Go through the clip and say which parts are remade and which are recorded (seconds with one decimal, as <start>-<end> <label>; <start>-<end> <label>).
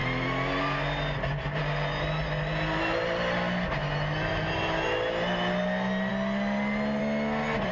0.0-7.7 recorded